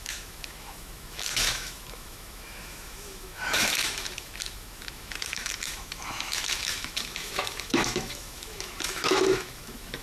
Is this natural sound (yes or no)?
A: no